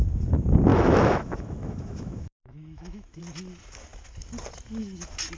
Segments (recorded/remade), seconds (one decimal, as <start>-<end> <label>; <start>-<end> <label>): 0.0-0.7 recorded; 0.7-3.2 remade; 3.2-5.4 recorded